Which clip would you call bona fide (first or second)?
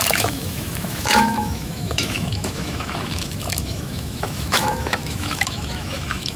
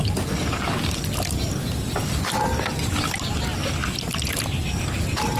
second